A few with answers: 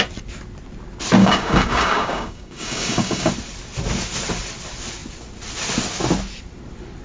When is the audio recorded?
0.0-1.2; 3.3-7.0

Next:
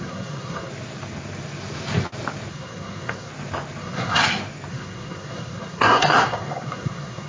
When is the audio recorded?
0.7-2.5; 3.3-3.8; 4.2-4.7

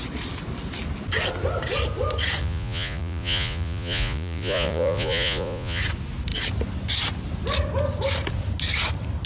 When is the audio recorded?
0.0-2.4; 5.8-9.3

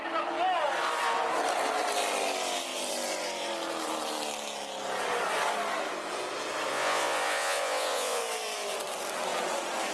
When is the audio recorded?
0.0-6.7; 8.2-9.9

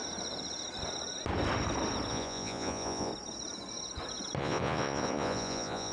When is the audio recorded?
0.0-2.1; 3.1-4.4

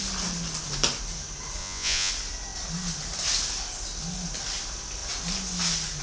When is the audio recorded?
0.0-1.6; 2.1-6.0

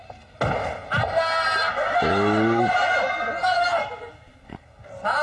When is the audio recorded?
0.0-5.2

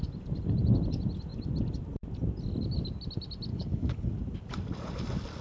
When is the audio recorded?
0.0-3.5; 4.1-5.4